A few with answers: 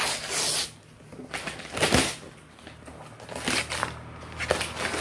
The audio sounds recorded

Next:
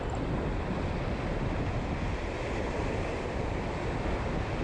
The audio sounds recorded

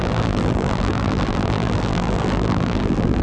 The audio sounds remade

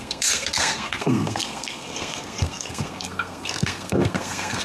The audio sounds remade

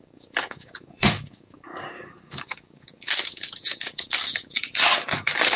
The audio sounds remade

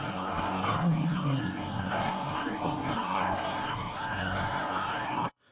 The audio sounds remade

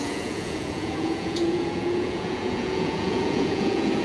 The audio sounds remade